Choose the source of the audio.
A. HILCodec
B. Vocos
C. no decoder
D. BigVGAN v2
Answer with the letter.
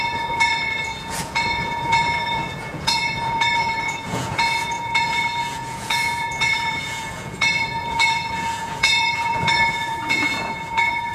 B